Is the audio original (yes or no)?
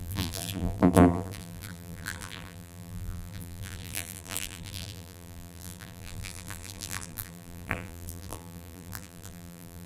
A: no